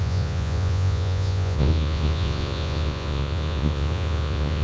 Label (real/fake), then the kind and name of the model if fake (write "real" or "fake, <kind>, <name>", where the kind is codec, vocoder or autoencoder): fake, vocoder, Vocos